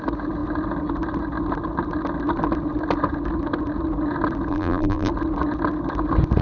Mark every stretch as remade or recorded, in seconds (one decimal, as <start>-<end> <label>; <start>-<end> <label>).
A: 0.0-4.5 recorded; 4.5-5.1 remade; 5.1-6.4 recorded